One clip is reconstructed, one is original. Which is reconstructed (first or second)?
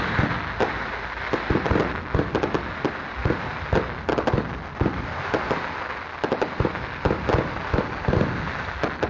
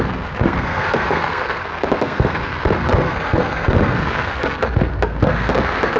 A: second